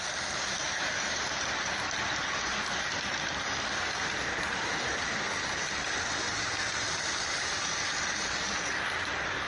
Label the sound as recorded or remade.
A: recorded